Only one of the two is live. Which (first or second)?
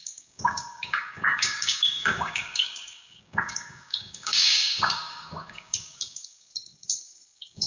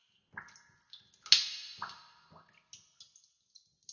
second